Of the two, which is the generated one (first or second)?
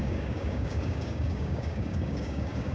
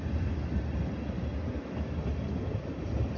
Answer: first